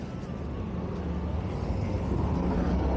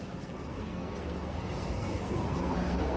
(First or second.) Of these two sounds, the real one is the first